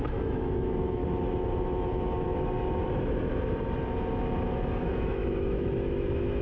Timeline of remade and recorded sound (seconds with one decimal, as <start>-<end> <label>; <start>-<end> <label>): 0.0-1.0 remade; 1.0-4.8 recorded; 4.8-6.4 remade